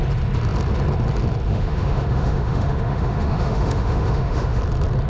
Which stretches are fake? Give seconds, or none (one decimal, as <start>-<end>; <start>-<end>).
1.5-4.6